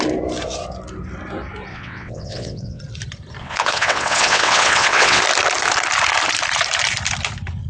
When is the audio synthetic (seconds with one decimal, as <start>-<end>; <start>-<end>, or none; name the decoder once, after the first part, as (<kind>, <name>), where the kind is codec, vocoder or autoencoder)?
1.7-2.8 (vocoder, WaveNeXt); 3.4-5.2